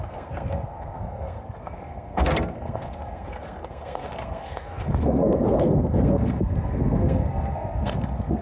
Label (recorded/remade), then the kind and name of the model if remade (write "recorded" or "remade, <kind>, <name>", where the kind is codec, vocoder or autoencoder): remade, codec, SNAC